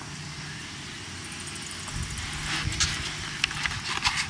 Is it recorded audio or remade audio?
recorded